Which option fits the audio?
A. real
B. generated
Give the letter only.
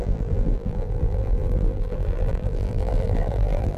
B